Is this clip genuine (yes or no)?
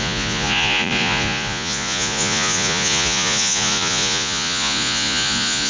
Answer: no